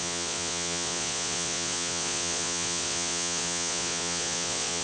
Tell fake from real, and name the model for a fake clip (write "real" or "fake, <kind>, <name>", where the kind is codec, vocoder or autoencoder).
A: fake, vocoder, Vocos